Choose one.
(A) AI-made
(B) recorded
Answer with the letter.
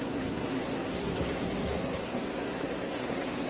A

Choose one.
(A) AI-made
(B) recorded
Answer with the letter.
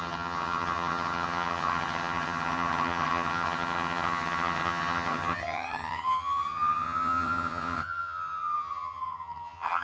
A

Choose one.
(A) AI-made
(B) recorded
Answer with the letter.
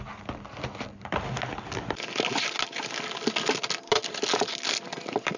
B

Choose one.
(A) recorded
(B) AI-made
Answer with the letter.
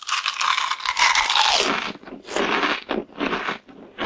A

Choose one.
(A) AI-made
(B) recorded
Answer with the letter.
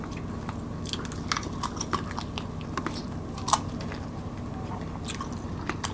B